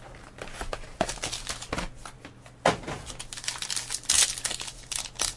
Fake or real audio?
real